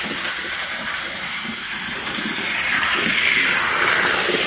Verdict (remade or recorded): recorded